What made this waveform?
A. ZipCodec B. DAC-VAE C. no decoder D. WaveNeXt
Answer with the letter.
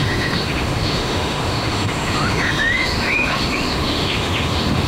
B